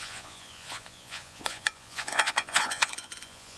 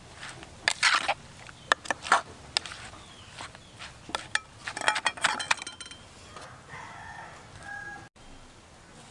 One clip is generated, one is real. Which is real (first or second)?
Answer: second